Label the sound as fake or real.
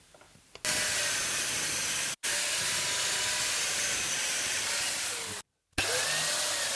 real